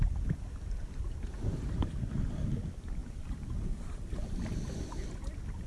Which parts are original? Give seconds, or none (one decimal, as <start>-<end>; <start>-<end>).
0.0-1.5; 2.0-3.0; 4.4-5.7